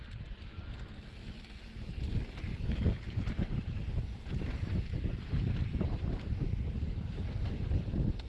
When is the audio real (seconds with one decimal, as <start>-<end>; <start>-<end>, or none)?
0.0-2.5; 7.5-8.3